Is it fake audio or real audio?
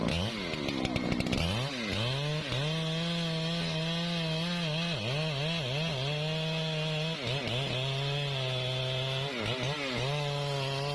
real